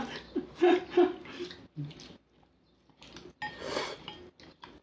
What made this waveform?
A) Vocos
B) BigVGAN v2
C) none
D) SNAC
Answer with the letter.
C